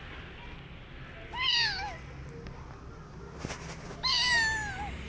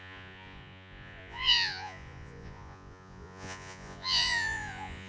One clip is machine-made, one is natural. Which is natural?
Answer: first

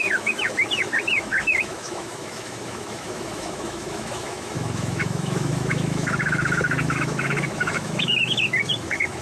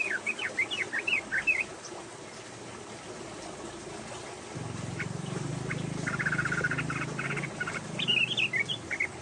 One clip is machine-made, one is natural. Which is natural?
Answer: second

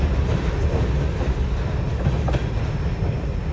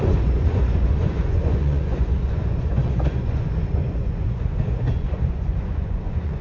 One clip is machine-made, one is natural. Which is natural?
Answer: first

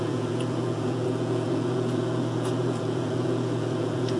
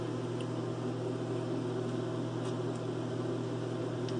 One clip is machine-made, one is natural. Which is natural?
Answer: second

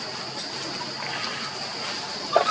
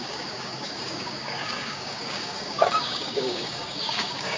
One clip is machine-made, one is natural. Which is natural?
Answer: first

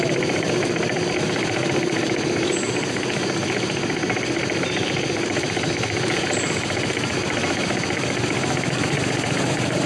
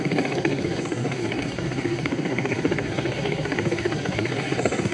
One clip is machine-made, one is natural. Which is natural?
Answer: first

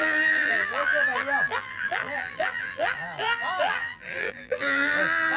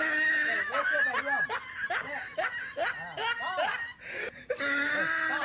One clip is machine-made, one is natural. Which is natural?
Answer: second